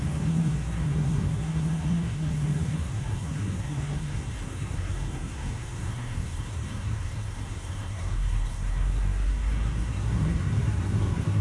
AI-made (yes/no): yes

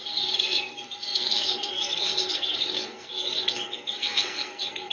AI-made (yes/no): yes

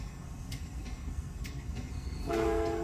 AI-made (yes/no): yes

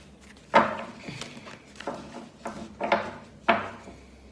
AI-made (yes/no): no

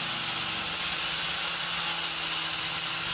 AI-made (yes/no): no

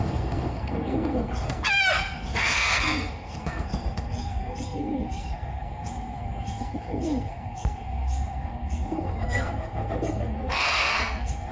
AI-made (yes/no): yes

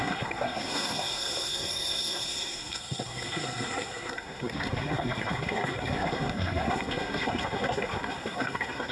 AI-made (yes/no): yes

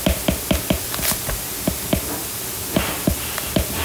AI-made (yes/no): no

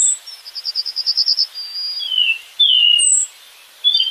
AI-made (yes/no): no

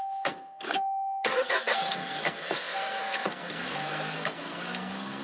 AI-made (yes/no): yes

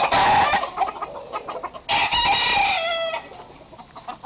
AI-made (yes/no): no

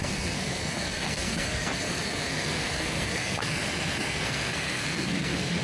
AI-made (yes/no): yes